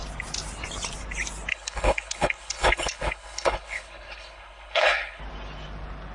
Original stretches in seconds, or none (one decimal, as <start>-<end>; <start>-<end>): 0.0-1.5; 5.2-6.1

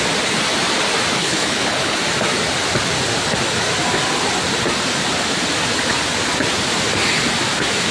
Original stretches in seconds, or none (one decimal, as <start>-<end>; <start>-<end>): 0.0-1.2; 2.0-7.9

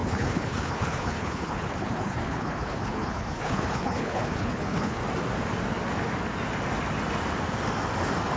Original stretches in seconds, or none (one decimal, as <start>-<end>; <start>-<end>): 5.0-8.4

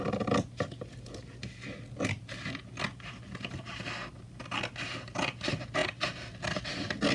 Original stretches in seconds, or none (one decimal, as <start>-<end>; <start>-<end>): 0.0-7.1

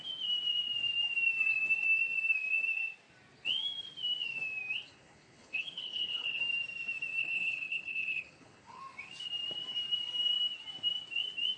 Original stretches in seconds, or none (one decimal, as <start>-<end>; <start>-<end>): 0.0-4.9; 6.4-7.2; 8.8-11.6

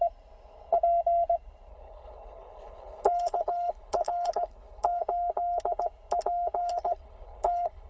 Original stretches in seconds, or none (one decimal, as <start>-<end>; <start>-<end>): 0.0-1.7; 5.0-6.6

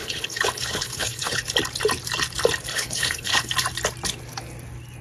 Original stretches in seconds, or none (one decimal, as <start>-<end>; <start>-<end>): 1.4-2.7; 3.5-5.0